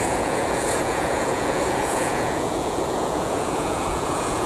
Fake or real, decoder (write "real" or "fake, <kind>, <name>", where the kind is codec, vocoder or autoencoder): fake, vocoder, Vocos